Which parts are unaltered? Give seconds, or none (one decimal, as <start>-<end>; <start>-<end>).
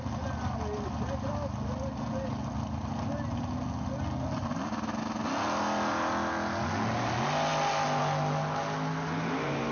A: 0.0-9.7